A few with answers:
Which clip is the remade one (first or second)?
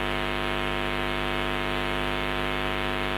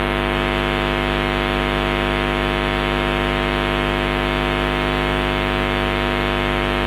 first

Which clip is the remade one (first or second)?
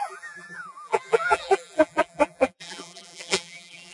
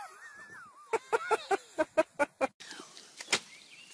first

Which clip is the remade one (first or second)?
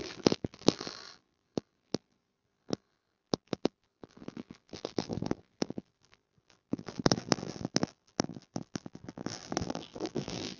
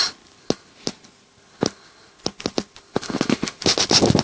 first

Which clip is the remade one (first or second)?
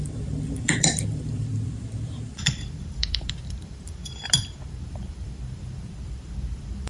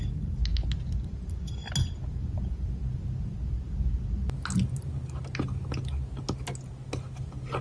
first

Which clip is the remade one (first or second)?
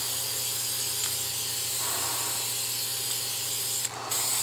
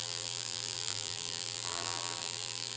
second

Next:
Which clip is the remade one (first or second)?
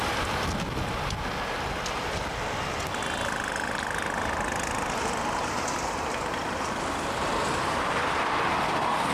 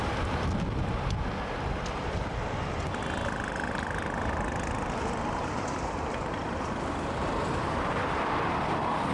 second